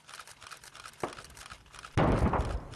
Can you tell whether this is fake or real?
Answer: real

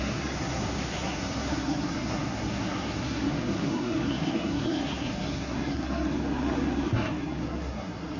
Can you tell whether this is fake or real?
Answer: fake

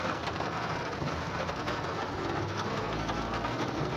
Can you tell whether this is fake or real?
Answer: fake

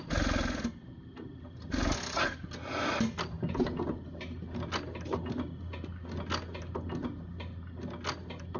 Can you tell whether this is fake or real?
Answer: real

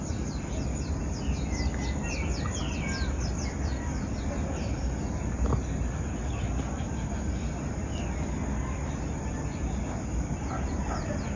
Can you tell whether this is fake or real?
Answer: real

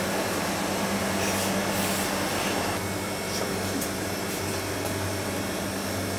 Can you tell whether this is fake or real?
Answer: real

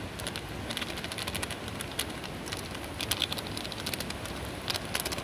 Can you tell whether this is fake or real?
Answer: real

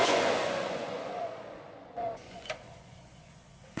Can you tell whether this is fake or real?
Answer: fake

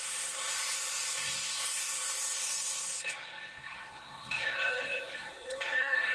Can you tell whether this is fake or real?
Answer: fake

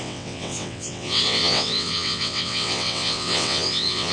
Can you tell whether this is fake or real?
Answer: fake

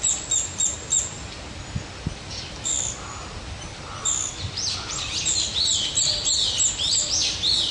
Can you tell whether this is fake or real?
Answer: real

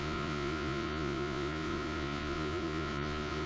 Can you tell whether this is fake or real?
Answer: fake